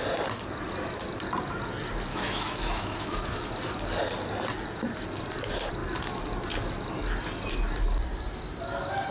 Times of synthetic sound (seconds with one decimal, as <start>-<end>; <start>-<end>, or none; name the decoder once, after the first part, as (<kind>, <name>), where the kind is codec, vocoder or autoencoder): 2.1-3.5 (autoencoder, DAC-VAE)